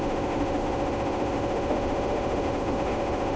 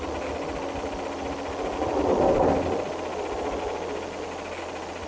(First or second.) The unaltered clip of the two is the second